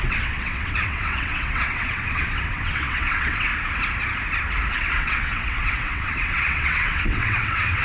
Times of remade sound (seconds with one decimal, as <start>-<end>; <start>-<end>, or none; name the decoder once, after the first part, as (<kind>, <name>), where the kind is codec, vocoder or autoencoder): 0.0-3.5 (vocoder, WaveNeXt); 4.7-7.8